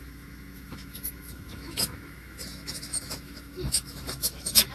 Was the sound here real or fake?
fake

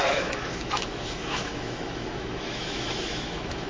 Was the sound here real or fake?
fake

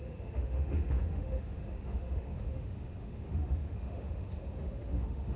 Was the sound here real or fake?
fake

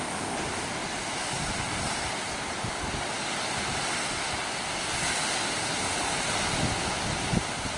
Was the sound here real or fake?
real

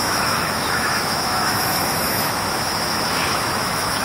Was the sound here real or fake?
fake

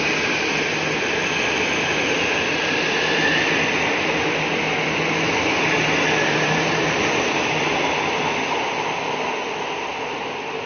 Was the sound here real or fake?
real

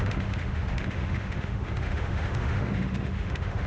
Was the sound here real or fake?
fake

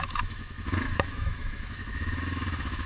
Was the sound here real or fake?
fake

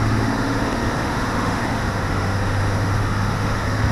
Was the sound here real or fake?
fake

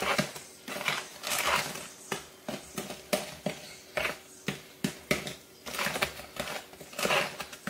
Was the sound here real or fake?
real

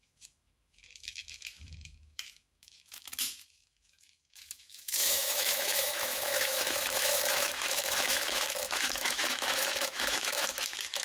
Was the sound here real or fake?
fake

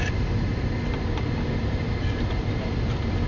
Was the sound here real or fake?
real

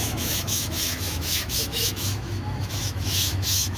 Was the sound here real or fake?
fake